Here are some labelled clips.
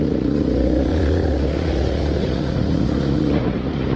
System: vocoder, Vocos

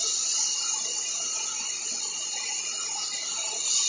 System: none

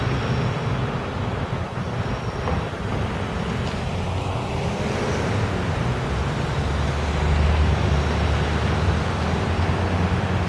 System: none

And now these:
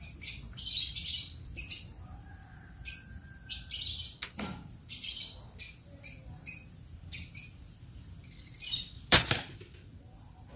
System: vocoder, BigVGAN v2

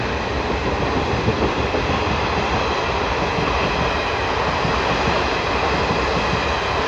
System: none